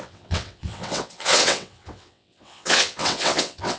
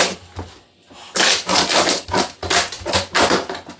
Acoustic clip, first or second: second